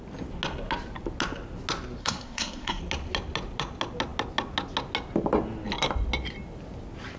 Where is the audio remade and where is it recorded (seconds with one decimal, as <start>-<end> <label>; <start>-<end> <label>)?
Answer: 0.0-2.0 recorded; 2.0-2.8 remade; 2.8-7.2 recorded